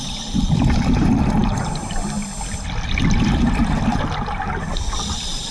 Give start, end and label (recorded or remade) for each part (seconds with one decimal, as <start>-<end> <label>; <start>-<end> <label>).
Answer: 0.0-5.5 recorded